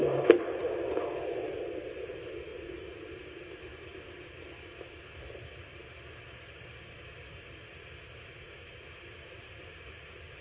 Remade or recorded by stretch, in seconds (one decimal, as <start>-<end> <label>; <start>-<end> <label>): 0.0-0.7 remade; 0.7-3.7 recorded; 3.7-6.7 remade; 6.7-10.4 recorded